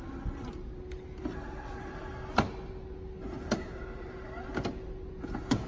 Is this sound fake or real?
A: real